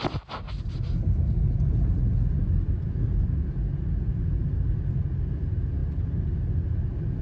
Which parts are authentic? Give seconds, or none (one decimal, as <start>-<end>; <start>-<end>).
0.0-7.2